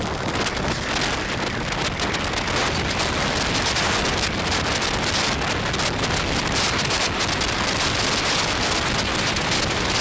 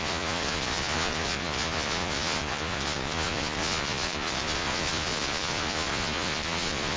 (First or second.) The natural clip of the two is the first